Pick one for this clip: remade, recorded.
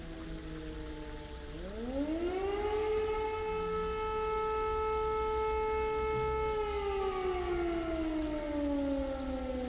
recorded